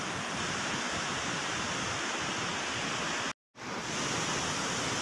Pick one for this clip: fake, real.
real